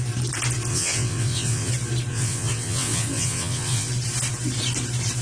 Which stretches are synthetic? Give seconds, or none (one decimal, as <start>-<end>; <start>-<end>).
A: 0.7-1.7; 2.1-3.9